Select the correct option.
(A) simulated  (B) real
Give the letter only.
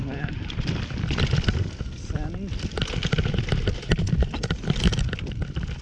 B